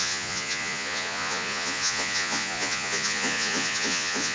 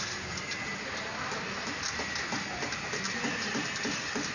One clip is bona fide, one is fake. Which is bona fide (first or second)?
second